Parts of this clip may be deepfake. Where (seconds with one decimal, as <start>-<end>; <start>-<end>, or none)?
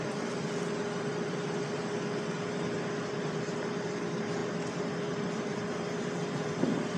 none